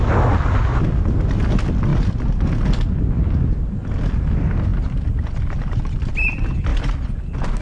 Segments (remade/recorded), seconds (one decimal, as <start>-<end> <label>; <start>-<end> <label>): 0.0-7.6 recorded